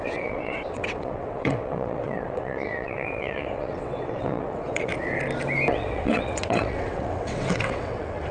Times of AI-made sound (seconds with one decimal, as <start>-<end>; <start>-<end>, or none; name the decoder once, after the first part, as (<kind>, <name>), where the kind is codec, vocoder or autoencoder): 0.0-4.9 (vocoder, WaveNeXt); 5.7-8.3

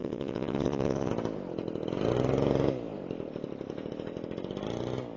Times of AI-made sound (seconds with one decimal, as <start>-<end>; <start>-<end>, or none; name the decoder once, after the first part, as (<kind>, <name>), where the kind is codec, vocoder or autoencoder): 0.0-1.1 (vocoder, WaveNeXt)

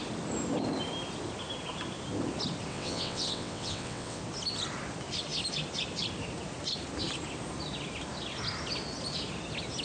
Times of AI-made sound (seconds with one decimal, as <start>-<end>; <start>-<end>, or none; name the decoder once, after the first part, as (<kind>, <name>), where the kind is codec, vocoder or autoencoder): 2.7-4.2 (vocoder, WaveNeXt)